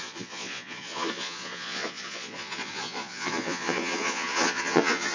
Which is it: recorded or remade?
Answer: remade